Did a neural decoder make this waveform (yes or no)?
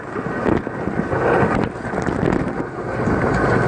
no